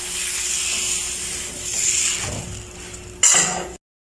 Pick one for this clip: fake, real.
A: real